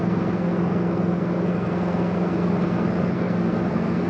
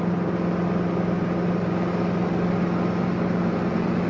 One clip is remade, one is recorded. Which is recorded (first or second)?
second